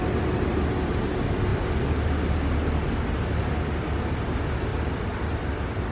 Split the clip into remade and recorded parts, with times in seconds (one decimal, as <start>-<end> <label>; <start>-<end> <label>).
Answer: 0.0-4.7 recorded; 4.7-5.9 remade